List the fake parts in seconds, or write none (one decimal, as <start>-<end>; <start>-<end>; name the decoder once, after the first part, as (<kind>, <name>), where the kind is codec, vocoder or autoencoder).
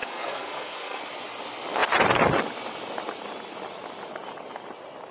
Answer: 0.0-1.0 (codec, SNAC)